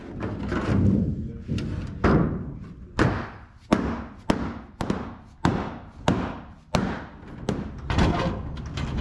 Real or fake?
real